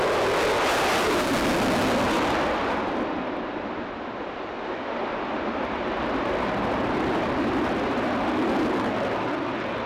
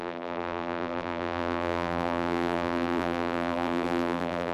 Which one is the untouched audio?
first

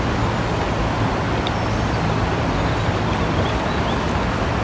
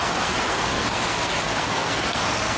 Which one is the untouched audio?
first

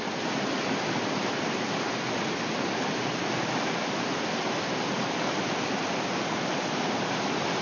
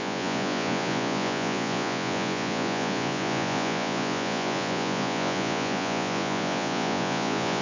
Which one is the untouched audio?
first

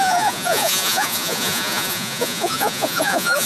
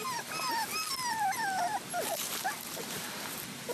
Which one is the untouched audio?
second